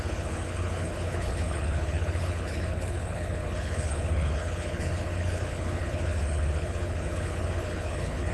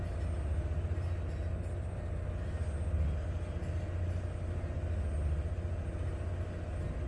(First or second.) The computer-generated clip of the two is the first